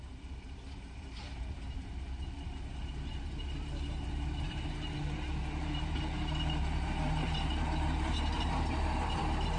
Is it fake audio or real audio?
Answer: fake